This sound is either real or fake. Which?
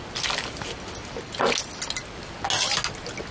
real